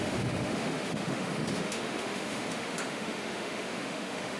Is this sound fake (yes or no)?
yes